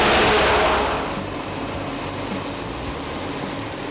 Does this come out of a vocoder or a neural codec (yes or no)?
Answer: no